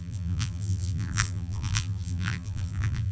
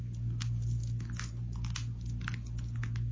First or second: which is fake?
first